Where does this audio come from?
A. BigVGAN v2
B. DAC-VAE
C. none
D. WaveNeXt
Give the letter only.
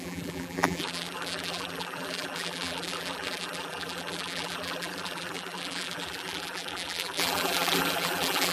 A